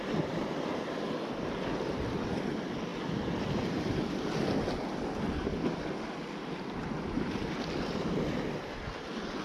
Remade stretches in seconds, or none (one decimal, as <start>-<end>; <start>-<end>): none